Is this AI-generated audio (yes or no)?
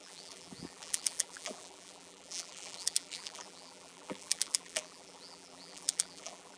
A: yes